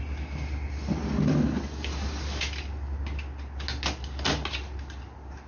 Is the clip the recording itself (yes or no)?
yes